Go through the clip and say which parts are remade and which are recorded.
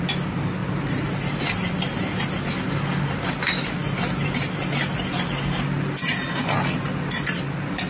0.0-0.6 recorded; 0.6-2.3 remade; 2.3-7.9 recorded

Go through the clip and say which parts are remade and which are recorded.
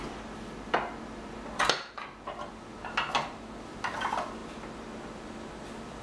0.0-6.0 recorded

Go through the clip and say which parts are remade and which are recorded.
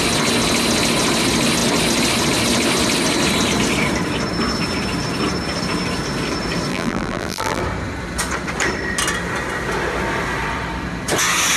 0.0-6.7 recorded; 6.7-7.6 remade; 7.6-11.6 recorded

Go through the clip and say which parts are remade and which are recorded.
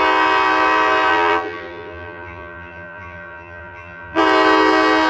0.0-1.1 recorded; 1.1-4.2 remade; 4.2-5.1 recorded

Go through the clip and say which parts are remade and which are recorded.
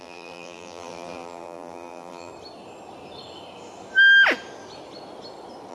0.0-2.3 remade; 2.3-5.7 recorded